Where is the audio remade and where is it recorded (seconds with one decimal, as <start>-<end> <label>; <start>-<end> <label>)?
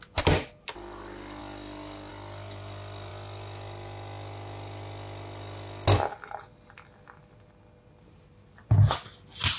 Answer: 0.0-9.6 recorded